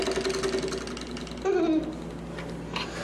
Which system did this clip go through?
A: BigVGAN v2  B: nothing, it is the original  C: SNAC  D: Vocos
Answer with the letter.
B